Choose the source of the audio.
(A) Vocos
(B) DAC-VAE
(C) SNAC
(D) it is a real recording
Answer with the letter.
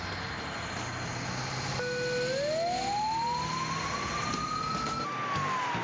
D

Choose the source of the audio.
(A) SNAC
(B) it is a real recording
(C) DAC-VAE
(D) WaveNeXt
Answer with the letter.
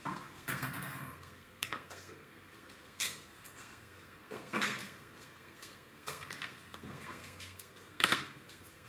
A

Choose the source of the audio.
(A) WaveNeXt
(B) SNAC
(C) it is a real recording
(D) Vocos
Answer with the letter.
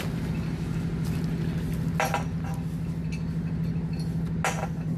C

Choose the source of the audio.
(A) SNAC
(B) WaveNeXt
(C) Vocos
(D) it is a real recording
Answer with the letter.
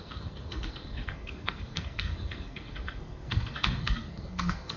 A